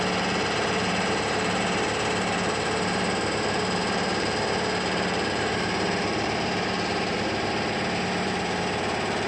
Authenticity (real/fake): fake